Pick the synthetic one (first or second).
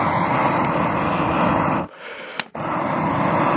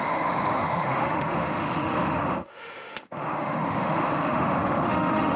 second